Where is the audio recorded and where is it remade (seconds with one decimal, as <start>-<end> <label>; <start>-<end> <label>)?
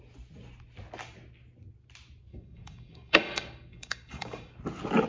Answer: 0.0-2.3 recorded; 2.3-4.6 remade; 4.6-5.1 recorded